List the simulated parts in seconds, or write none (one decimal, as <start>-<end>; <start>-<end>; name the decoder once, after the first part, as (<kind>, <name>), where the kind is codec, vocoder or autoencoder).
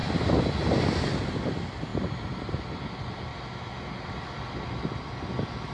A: none